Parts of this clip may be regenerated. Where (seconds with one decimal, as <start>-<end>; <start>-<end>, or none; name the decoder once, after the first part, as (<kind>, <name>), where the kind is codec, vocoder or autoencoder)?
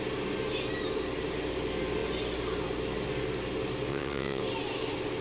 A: 3.9-4.4 (vocoder, WaveNeXt)